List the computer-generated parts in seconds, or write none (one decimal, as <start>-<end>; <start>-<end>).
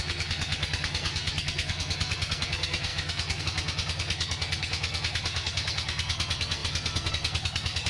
0.0-7.9